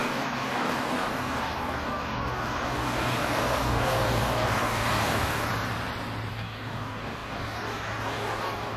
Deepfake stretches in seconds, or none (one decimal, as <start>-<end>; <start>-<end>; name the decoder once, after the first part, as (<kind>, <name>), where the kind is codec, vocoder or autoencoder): 0.0-5.5 (codec, DAC); 6.3-8.8